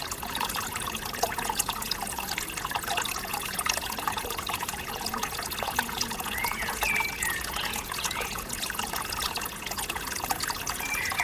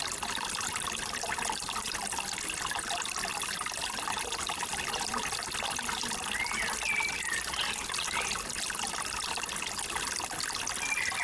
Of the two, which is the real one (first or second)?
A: second